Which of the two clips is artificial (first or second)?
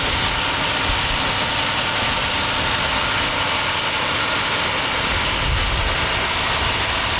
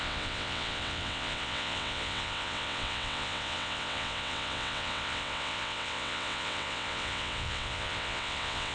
second